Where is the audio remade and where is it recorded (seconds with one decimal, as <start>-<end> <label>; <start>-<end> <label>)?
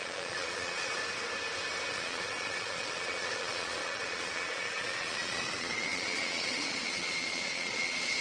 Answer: 0.0-1.0 remade; 1.0-1.9 recorded; 1.9-8.2 remade